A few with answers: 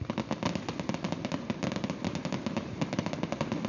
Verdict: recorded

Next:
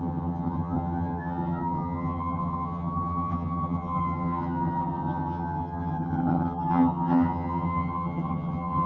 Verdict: remade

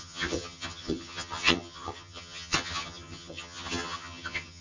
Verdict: remade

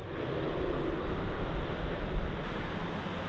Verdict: recorded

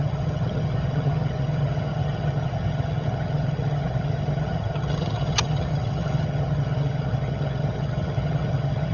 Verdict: remade